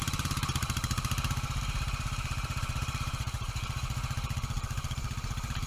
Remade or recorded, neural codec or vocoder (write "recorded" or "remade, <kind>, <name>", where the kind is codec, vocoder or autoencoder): remade, vocoder, BigVGAN v2